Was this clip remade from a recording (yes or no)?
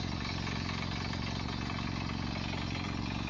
no